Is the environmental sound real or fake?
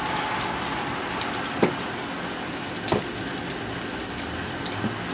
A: real